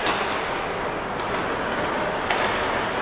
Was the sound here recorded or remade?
recorded